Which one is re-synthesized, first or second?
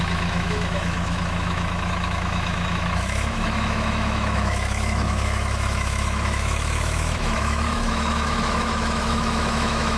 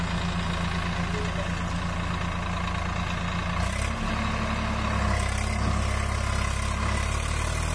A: first